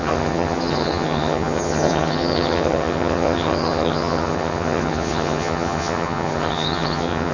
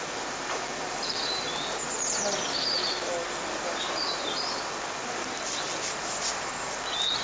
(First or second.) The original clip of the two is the second